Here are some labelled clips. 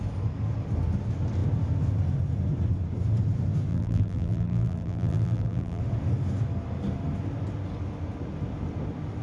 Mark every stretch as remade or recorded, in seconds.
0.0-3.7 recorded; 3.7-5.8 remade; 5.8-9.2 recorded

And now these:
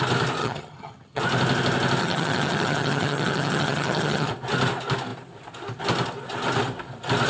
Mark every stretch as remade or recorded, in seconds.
0.0-0.4 recorded; 0.4-1.2 remade; 1.2-2.0 recorded; 2.0-4.3 remade; 4.3-7.3 recorded

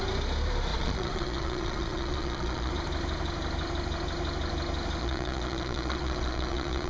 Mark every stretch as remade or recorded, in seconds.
0.0-0.7 recorded; 0.7-2.7 remade; 2.7-5.0 recorded; 5.0-6.9 remade

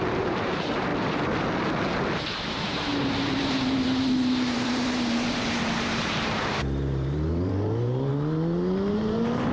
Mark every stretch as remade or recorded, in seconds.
0.0-0.9 remade; 0.9-2.4 recorded; 2.4-8.1 remade; 8.1-8.9 recorded; 8.9-9.5 remade

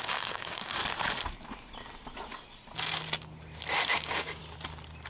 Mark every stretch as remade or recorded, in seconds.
0.0-0.8 remade; 0.8-3.9 recorded; 3.9-4.4 remade; 4.4-5.1 recorded

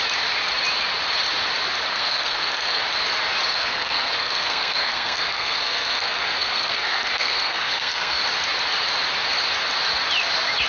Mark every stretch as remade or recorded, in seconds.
0.0-1.9 recorded; 1.9-2.8 remade; 2.8-3.5 recorded; 3.5-8.2 remade; 8.2-10.7 recorded

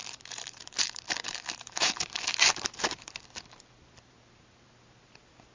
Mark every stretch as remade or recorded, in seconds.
0.0-3.2 remade; 3.2-5.5 recorded

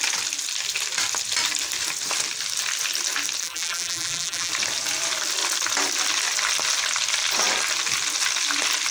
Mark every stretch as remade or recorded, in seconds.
0.0-3.4 recorded; 3.4-4.5 remade; 4.5-8.9 recorded